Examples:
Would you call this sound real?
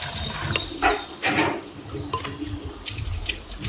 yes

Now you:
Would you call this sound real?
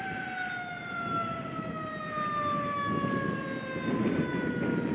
yes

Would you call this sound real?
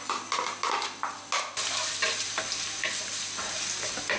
yes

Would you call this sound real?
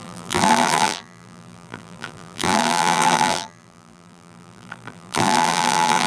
no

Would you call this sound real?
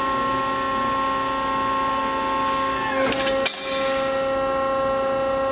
yes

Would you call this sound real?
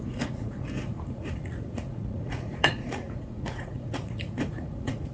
no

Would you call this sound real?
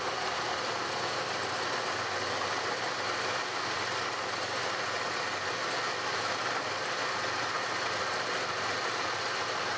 yes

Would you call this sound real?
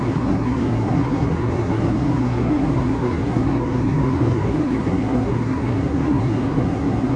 no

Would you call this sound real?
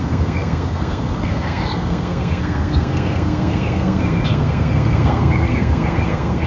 no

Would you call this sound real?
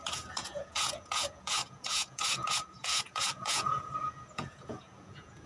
no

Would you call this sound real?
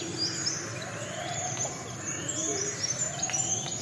yes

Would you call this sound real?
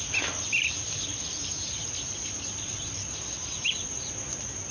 yes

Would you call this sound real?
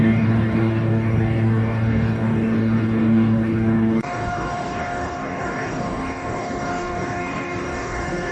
no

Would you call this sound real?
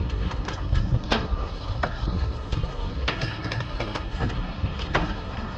no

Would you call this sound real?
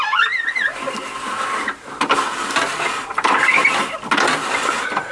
yes